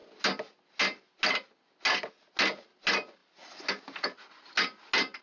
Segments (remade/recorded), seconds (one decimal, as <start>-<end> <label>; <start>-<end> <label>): 0.0-5.2 recorded